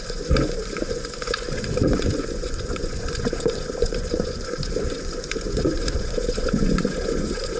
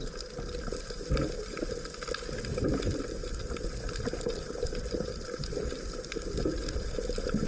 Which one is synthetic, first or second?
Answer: first